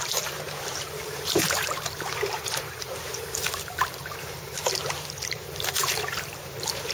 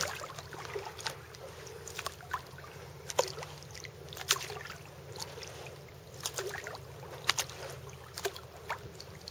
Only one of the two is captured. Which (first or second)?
second